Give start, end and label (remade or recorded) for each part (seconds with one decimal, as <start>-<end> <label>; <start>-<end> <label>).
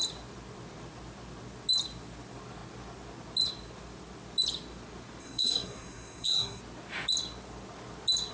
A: 0.0-5.2 recorded; 5.2-6.6 remade; 6.6-8.3 recorded